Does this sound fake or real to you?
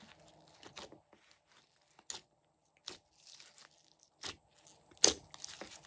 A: real